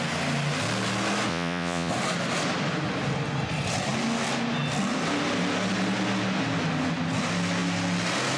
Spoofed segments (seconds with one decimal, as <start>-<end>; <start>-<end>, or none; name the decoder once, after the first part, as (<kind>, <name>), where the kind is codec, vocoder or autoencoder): 1.3-1.9 (vocoder, Vocos)